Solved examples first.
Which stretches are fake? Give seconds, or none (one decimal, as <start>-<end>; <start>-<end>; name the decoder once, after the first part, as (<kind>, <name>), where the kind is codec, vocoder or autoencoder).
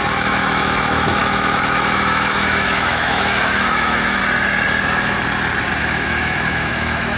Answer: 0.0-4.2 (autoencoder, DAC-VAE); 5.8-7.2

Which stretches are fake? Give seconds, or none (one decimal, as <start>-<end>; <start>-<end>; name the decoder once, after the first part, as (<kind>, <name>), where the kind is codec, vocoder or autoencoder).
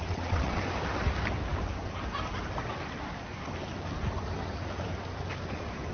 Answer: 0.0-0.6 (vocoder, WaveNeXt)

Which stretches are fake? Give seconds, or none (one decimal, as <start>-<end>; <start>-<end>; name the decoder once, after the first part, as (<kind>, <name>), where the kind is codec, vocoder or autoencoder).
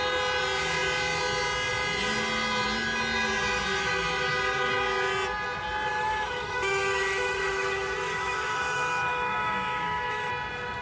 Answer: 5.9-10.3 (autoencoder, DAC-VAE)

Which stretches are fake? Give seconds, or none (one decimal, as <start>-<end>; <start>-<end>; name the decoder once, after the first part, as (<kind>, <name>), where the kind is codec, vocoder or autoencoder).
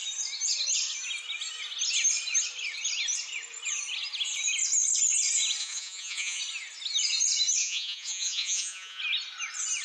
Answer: 5.6-6.4 (vocoder, Vocos); 7.6-9.0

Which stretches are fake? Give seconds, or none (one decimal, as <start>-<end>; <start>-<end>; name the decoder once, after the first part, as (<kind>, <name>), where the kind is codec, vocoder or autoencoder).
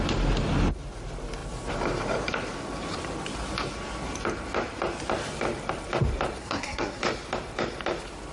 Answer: 6.4-7.0 (codec, SNAC)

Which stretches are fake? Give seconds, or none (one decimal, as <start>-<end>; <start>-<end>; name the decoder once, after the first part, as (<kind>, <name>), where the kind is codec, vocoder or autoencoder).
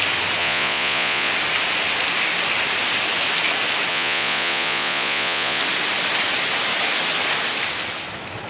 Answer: 0.4-1.3 (vocoder, Vocos); 3.9-5.6